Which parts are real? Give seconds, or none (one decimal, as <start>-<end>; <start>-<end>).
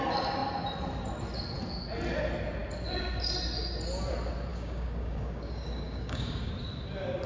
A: 0.0-4.5; 6.5-7.3